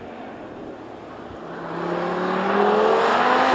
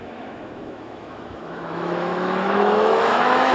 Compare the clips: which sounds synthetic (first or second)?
second